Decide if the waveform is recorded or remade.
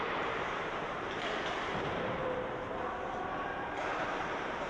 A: remade